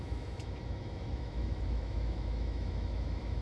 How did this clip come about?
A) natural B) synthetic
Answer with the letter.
B